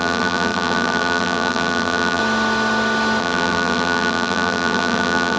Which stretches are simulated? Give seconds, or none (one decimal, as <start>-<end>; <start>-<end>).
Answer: 0.0-2.2; 3.2-5.4